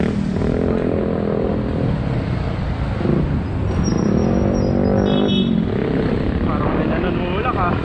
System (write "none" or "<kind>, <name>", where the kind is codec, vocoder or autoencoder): none